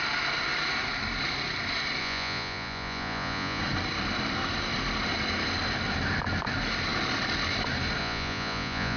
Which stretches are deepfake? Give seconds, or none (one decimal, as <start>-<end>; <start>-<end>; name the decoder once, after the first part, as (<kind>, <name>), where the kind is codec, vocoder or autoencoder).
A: 2.0-3.6 (vocoder, Vocos); 8.0-9.0